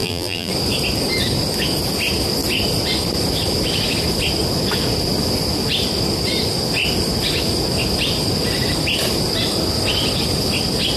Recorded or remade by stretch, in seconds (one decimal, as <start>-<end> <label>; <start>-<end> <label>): 0.0-0.5 remade; 0.5-11.0 recorded